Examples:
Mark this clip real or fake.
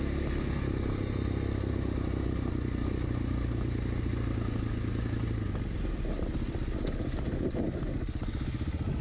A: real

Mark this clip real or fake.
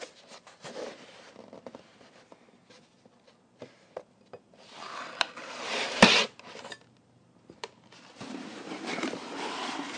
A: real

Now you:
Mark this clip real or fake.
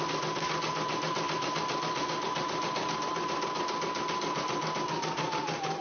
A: real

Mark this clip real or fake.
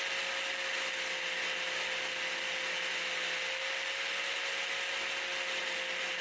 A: real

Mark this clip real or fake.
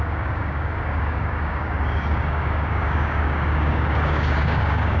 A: fake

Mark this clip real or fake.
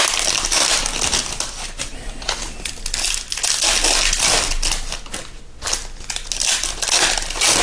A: real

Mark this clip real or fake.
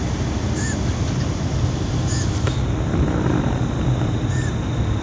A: real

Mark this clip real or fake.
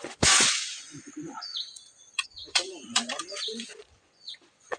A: fake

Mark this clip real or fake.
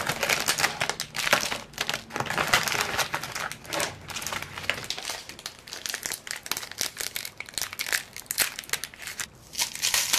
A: real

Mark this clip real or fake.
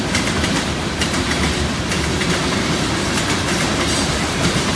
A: fake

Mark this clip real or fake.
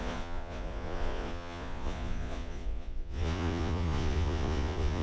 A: fake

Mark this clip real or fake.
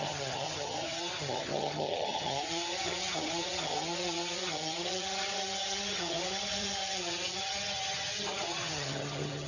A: fake